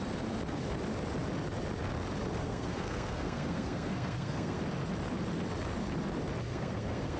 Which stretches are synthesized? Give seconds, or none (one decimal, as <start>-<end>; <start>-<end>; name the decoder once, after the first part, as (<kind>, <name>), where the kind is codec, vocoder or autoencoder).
2.4-4.6 (codec, SNAC); 6.5-7.2